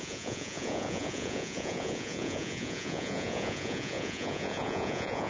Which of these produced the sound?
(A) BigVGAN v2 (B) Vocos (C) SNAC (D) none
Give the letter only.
B